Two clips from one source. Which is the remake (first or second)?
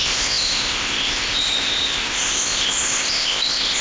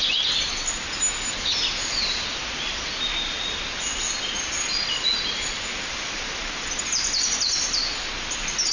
first